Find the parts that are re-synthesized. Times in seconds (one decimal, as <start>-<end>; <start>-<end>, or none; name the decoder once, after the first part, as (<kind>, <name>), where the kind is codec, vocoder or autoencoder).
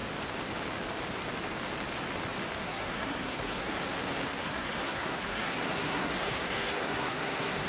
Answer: 2.6-3.7 (codec, SNAC); 4.4-7.7